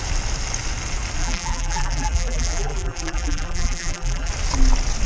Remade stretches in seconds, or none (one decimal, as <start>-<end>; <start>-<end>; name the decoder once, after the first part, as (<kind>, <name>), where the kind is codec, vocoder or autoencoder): 1.2-4.3 (vocoder, BigVGAN v2)